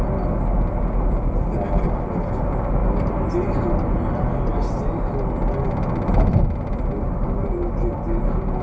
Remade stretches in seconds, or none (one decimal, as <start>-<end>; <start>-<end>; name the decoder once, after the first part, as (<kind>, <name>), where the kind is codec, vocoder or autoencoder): none